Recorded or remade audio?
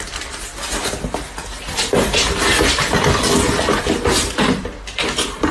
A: recorded